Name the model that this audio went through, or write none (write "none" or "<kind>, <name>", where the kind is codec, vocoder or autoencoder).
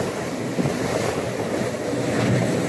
none